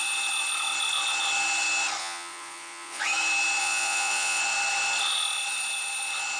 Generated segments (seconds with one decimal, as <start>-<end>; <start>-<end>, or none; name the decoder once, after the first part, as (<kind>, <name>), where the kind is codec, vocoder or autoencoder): 2.0-3.0 (vocoder, Vocos); 3.6-4.4